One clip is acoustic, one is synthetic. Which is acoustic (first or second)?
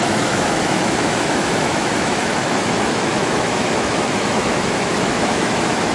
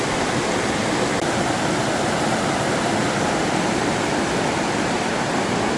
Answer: second